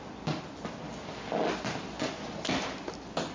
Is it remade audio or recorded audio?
recorded